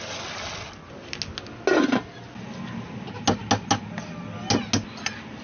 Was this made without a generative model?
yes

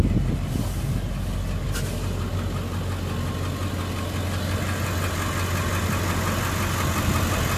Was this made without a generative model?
yes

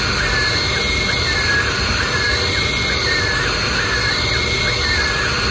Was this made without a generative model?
yes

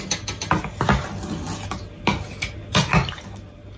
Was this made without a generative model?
yes